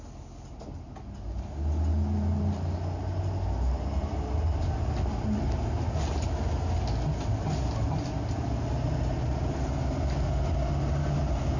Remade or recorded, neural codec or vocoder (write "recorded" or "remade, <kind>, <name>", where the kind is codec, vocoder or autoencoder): recorded